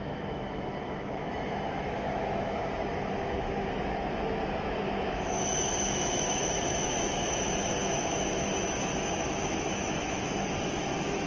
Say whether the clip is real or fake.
fake